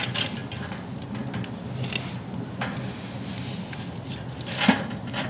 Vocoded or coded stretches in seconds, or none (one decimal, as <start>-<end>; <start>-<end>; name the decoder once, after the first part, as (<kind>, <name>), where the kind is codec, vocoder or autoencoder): none